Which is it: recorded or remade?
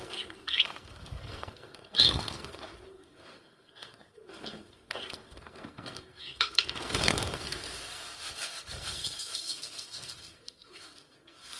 remade